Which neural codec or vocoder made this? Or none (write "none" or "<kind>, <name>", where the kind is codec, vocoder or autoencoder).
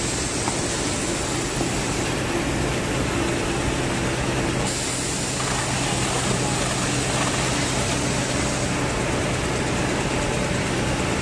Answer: none